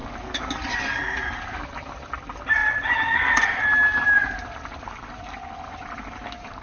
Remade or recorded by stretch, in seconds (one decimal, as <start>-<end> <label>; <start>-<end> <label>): 0.0-6.6 recorded